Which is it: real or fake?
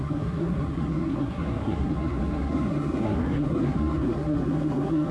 fake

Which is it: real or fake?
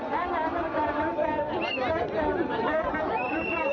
real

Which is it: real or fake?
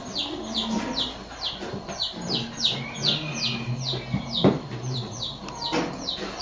real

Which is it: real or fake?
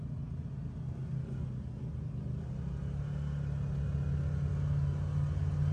real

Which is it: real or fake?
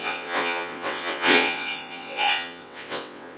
fake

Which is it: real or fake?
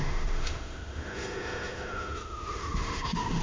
fake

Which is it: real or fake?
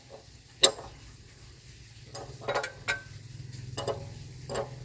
real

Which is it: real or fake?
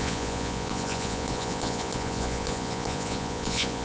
fake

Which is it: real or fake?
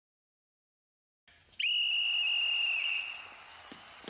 real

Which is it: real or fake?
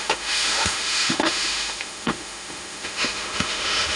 fake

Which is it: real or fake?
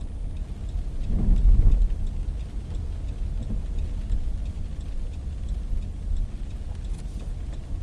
real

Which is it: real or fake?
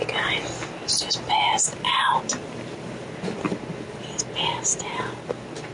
real